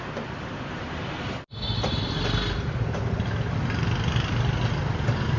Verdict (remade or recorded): recorded